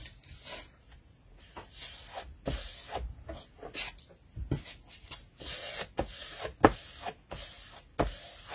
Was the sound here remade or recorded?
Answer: recorded